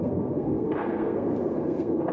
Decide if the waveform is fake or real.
fake